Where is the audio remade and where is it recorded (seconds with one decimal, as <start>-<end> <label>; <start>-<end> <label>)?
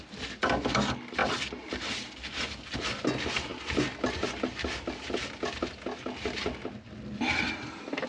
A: 0.0-8.1 recorded